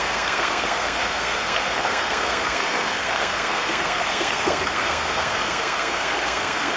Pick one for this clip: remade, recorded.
remade